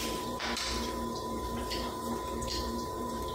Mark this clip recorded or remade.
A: remade